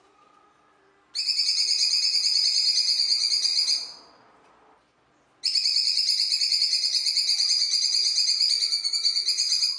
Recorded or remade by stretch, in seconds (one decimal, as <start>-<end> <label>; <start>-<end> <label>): 0.0-9.8 recorded